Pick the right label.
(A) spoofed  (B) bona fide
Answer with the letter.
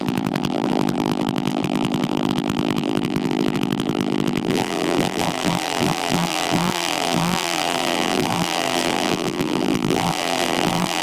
A